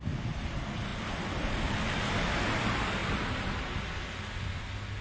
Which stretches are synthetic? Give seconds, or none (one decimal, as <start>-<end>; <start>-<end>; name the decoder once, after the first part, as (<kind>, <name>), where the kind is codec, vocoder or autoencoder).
none